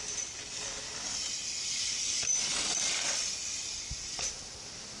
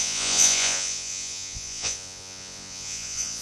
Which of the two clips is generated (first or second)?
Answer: second